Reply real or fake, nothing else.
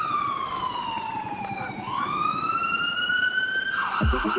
real